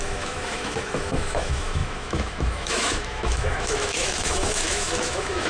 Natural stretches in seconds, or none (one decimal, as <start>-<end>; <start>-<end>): none